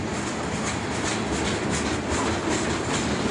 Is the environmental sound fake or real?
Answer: real